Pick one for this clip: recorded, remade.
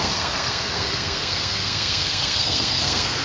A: remade